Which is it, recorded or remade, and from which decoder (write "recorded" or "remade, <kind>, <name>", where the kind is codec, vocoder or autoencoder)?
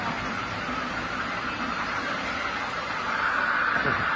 recorded